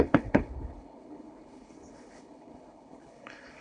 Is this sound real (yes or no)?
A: no